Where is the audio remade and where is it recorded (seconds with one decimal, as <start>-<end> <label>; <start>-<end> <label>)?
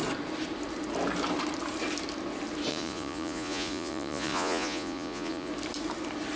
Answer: 0.0-2.7 recorded; 2.7-5.5 remade; 5.5-6.4 recorded